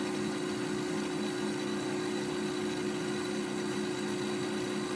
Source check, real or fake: real